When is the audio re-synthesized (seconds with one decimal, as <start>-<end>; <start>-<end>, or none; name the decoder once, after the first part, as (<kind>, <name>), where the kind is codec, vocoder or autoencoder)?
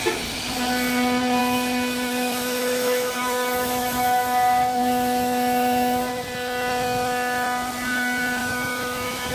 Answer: 1.4-6.1 (autoencoder, DAC-VAE); 8.4-9.3